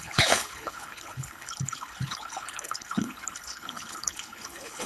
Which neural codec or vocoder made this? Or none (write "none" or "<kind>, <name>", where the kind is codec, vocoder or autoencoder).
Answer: codec, HILCodec